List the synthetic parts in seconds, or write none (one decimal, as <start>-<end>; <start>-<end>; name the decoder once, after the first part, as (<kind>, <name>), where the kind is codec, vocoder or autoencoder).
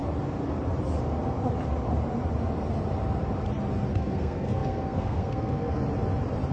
3.9-5.8 (codec, SNAC)